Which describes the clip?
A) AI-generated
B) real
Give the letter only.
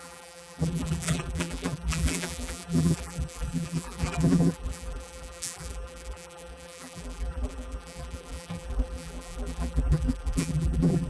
A